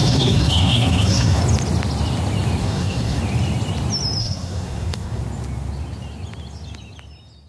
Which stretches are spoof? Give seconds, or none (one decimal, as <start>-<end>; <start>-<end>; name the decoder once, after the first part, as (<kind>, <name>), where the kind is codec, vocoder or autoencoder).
0.0-1.4 (codec, SNAC); 2.6-3.2; 4.2-5.2